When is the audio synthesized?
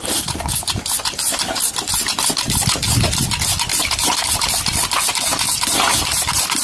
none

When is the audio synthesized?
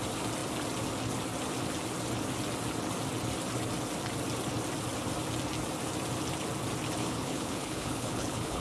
7.0-8.6 (codec, HILCodec)